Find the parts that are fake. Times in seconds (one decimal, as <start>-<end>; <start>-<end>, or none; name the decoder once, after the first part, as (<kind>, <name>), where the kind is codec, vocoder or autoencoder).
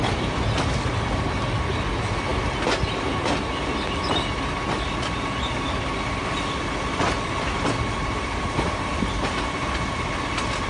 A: none